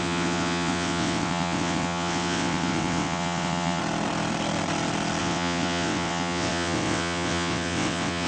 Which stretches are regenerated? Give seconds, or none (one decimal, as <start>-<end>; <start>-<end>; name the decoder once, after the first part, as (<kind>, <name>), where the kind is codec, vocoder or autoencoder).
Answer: 0.0-3.8 (vocoder, WaveNeXt); 5.2-8.3